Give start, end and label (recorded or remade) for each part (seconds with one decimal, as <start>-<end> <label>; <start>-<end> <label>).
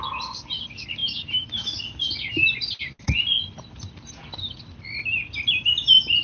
0.0-1.0 recorded; 1.0-1.6 remade; 1.6-6.2 recorded